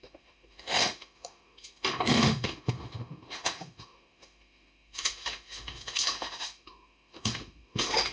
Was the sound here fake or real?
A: fake